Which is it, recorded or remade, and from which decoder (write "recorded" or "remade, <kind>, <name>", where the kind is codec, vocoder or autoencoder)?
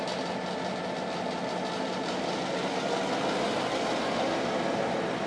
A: recorded